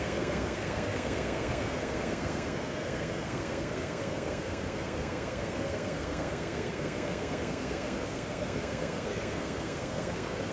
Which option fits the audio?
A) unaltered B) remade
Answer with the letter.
B